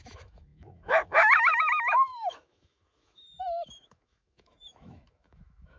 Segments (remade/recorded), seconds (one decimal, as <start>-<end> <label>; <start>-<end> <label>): 0.0-5.8 remade